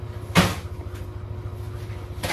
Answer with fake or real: real